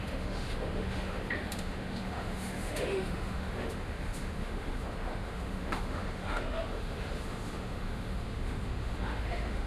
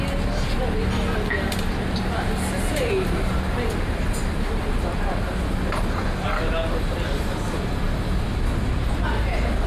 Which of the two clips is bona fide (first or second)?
second